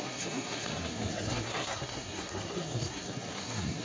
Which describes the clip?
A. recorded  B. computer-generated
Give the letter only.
B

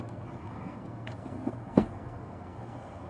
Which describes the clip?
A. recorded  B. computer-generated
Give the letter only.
B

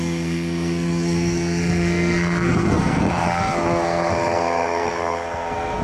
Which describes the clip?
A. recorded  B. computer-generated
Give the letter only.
B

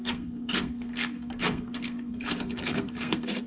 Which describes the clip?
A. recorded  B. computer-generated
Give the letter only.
B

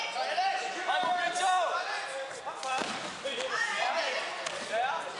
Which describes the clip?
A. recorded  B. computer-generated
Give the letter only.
A